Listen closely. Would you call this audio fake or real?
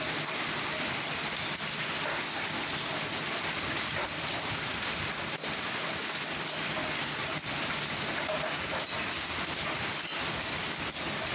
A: real